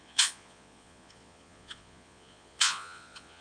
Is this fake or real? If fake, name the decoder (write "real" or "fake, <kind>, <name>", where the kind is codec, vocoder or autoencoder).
fake, vocoder, Vocos